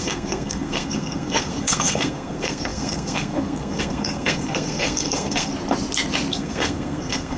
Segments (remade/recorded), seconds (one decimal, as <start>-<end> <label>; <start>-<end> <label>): 0.0-5.5 remade; 5.5-6.3 recorded; 6.3-7.4 remade